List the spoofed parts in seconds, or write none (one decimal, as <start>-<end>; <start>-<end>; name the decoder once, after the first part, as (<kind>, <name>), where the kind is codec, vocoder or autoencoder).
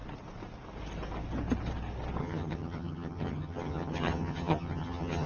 2.2-5.3 (vocoder, HiFi-GAN)